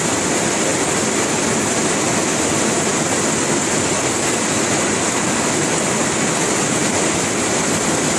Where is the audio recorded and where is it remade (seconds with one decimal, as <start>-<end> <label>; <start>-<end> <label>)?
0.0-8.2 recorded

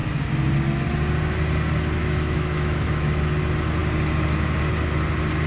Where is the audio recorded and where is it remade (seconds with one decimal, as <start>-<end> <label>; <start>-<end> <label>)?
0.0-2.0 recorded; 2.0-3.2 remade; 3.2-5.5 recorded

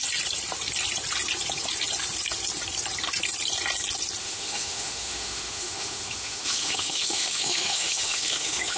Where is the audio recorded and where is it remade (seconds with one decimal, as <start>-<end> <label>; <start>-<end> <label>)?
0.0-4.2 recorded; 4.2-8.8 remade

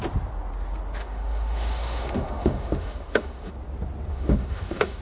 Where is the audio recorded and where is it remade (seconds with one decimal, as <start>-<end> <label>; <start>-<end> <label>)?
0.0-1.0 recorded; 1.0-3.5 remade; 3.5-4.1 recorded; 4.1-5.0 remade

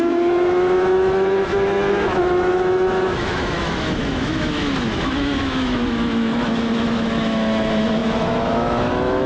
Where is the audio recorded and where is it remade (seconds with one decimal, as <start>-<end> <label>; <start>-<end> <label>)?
0.0-9.3 remade

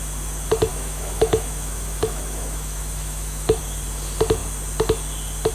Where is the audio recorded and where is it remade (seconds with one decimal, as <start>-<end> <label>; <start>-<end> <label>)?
0.0-0.7 recorded; 0.7-3.6 remade; 3.6-5.5 recorded

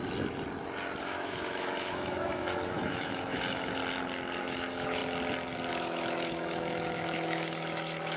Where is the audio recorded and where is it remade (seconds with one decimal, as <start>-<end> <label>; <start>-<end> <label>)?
0.0-1.0 recorded; 1.0-3.8 remade; 3.8-4.4 recorded; 4.4-5.0 remade; 5.0-5.7 recorded; 5.7-8.2 remade

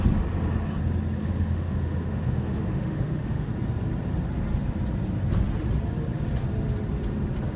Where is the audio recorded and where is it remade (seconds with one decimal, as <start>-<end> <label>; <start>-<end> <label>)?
0.0-1.2 recorded; 1.2-3.5 remade; 3.5-7.6 recorded